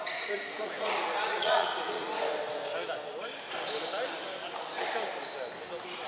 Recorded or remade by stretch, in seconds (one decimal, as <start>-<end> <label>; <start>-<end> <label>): 0.0-2.1 remade; 2.1-6.1 recorded